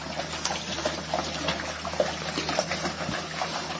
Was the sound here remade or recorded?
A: recorded